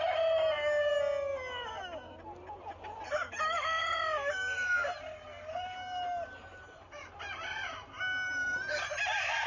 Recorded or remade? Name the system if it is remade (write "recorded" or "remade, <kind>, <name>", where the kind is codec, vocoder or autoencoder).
recorded